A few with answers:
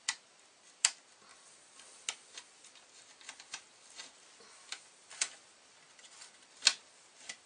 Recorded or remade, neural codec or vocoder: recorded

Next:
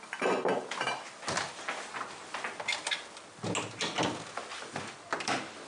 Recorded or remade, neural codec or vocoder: recorded